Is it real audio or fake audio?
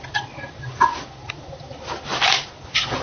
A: real